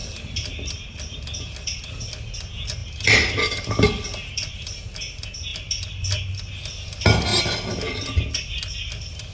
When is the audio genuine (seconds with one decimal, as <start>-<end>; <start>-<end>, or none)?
0.5-5.5; 6.4-7.3; 7.9-9.3